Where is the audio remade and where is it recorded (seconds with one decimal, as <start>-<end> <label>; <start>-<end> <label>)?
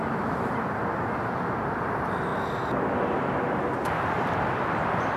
0.0-2.3 remade; 2.3-4.1 recorded; 4.1-5.2 remade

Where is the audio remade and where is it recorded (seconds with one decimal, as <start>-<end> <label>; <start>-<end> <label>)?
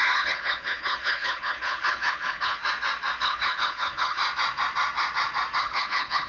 0.0-2.6 remade; 2.6-3.2 recorded; 3.2-4.2 remade; 4.2-5.6 recorded; 5.6-6.3 remade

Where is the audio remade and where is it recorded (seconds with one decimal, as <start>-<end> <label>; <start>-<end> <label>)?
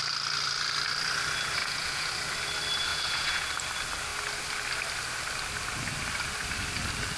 0.0-1.6 recorded; 1.6-2.1 remade; 2.1-2.9 recorded; 2.9-3.5 remade; 3.5-7.2 recorded